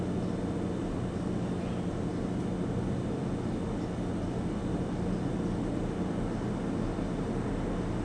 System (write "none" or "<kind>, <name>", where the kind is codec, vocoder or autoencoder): none